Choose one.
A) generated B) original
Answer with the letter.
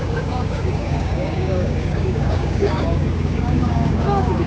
A